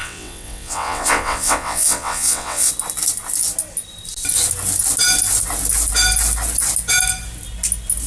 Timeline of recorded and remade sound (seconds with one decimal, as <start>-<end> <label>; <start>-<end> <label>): 0.0-2.7 remade; 2.7-8.1 recorded